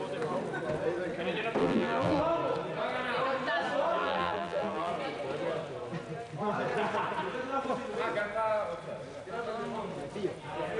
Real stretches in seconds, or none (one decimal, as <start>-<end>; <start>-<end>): 0.0-1.6; 2.2-4.0; 4.9-10.8